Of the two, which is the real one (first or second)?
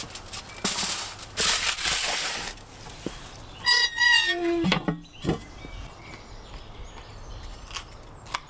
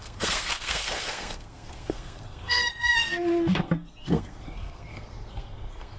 first